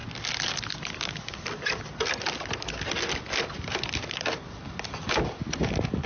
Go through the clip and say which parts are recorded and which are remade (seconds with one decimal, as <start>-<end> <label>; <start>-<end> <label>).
0.0-6.1 recorded